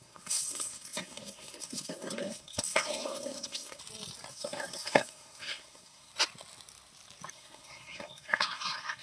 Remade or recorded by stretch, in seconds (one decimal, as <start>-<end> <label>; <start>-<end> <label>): 0.0-3.8 remade; 3.8-4.3 recorded; 4.3-6.1 remade; 6.1-7.3 recorded; 7.3-9.0 remade